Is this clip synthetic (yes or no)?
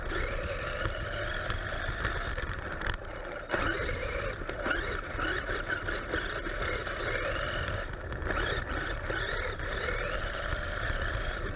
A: no